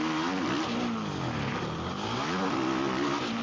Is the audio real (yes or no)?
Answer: yes